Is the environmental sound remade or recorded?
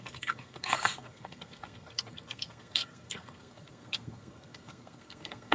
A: remade